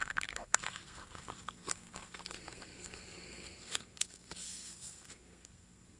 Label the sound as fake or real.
fake